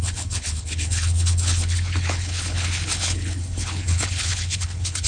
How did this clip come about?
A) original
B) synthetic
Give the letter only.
B